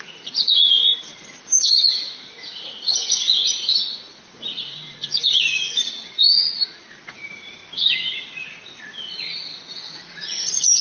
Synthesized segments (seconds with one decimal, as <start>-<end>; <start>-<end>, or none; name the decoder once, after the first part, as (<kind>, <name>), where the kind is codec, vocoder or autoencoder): 0.0-7.6 (vocoder, Vocos); 8.1-10.8